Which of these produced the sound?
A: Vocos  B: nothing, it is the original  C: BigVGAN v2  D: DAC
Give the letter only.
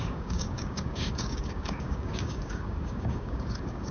D